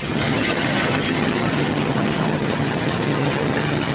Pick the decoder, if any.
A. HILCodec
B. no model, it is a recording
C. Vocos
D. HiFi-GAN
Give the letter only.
D